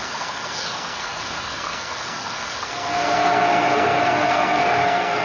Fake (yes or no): yes